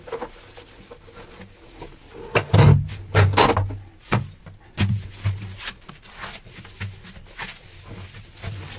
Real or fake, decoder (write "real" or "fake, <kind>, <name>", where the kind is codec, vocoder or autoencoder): real